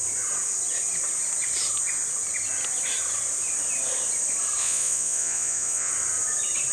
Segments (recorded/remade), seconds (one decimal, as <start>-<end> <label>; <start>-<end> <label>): 0.0-4.6 recorded; 4.6-5.9 remade; 5.9-6.7 recorded